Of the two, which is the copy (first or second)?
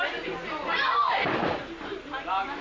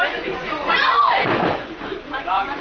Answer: second